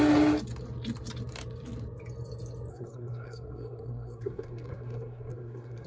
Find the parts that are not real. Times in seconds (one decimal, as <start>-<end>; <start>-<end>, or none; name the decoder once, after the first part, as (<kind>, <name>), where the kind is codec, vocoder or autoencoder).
2.7-5.9 (codec, SNAC)